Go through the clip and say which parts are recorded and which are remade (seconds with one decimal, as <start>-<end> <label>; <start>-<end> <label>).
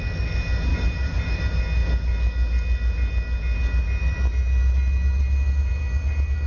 0.0-0.7 recorded; 0.7-1.4 remade; 1.4-6.5 recorded